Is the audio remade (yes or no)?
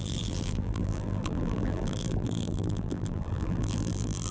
yes